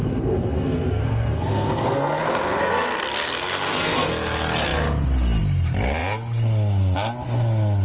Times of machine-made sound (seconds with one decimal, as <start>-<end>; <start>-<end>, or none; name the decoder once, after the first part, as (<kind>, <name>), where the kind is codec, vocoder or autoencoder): 0.0-4.1 (codec, SNAC)